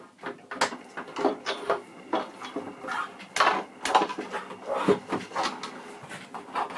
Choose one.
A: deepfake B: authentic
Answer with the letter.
B